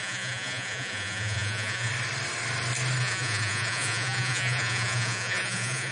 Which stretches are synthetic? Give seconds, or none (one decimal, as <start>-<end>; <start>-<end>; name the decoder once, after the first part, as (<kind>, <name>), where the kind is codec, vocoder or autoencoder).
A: 0.0-1.9 (vocoder, Vocos); 3.0-5.9